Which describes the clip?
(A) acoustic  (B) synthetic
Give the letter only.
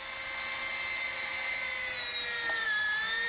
A